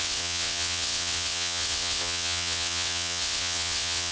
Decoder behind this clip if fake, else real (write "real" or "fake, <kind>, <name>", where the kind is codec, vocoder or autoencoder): fake, vocoder, WaveNeXt